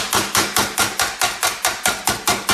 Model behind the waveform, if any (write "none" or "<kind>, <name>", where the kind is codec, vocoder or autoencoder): none